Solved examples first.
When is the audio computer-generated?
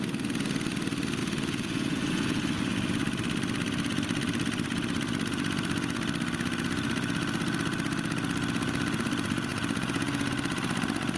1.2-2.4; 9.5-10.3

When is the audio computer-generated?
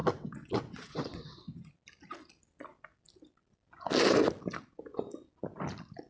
0.0-1.7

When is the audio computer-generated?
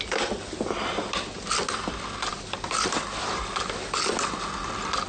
none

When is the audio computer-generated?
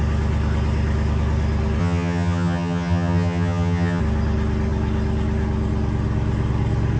1.8-4.0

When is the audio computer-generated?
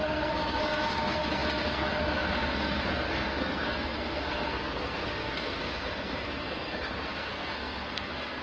0.0-8.4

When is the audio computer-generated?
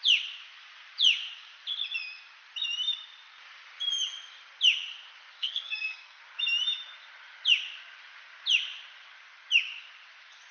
5.4-6.2